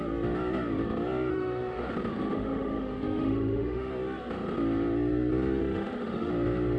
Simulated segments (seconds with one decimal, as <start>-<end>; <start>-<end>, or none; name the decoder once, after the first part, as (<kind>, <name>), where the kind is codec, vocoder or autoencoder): 1.3-1.9 (autoencoder, DAC-VAE); 2.3-3.9; 5.6-6.3